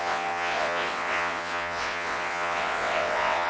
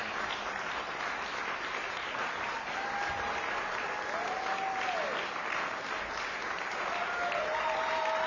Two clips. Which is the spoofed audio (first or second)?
first